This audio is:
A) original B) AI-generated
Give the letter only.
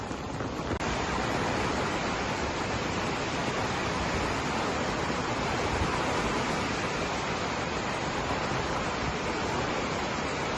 A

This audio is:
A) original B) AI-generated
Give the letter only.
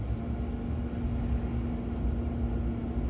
A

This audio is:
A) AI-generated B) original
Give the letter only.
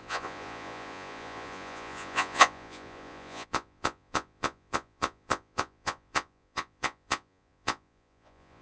A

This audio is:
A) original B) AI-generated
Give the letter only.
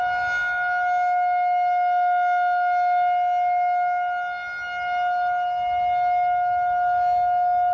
A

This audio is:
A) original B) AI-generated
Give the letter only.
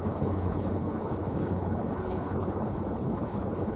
B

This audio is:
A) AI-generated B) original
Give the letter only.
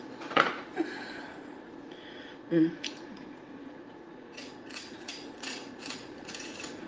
A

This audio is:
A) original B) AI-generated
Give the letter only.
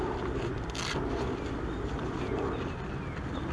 A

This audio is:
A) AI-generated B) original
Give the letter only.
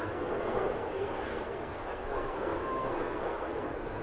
A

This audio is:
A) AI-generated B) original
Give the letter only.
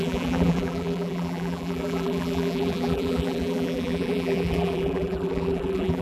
A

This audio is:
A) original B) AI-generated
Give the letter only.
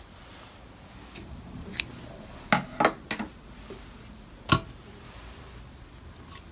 A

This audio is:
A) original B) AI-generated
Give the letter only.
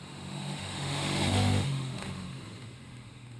B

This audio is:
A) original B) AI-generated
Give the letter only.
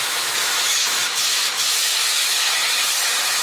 B